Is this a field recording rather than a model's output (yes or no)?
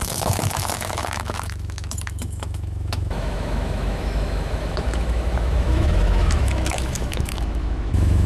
no